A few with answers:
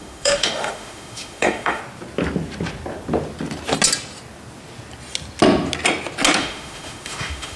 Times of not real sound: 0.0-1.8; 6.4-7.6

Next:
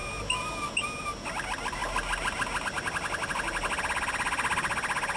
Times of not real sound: none